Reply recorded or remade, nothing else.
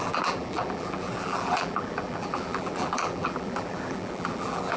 remade